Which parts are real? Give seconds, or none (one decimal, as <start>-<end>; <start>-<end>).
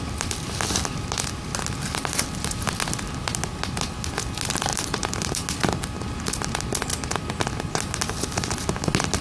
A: 0.0-9.2